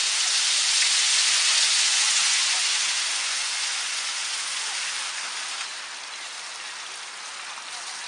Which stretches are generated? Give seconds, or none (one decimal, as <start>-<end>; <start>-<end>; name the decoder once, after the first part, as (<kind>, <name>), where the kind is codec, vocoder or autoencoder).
0.0-4.7 (vocoder, Vocos)